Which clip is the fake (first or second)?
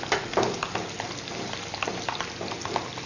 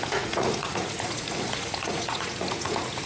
second